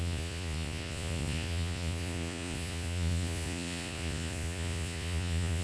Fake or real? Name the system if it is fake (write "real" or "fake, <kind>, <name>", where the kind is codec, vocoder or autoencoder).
fake, vocoder, Vocos